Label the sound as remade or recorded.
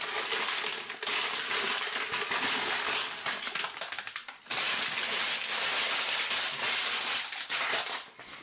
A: recorded